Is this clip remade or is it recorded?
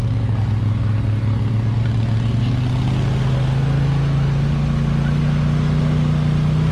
recorded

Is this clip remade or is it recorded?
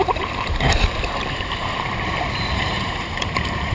remade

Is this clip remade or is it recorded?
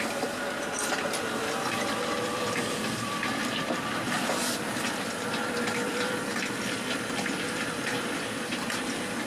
remade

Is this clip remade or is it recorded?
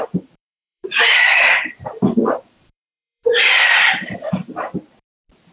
remade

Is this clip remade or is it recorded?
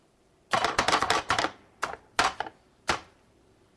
remade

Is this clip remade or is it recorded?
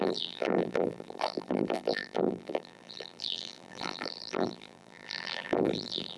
remade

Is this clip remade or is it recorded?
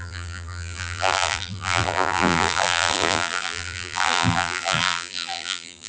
remade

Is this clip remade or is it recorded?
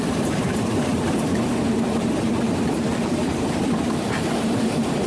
remade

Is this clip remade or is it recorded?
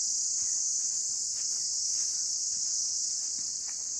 recorded